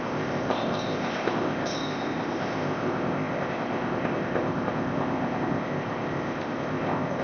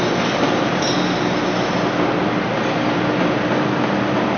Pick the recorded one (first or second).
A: second